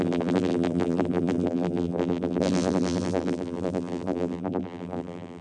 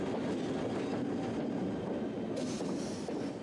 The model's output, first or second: first